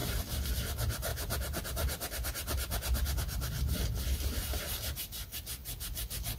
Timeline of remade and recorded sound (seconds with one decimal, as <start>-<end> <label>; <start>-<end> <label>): 0.0-0.5 remade; 0.5-6.4 recorded